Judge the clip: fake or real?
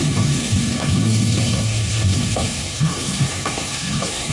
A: fake